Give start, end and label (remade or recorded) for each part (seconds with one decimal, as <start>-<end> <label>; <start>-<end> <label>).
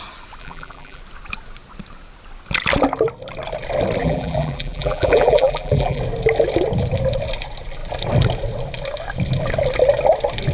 0.0-0.4 recorded; 0.4-1.0 remade; 1.0-4.0 recorded; 4.0-6.0 remade; 6.0-10.5 recorded